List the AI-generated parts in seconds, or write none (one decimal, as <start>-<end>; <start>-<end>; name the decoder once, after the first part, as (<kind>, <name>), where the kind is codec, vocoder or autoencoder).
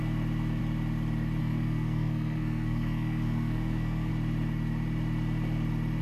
1.4-4.1 (codec, SNAC)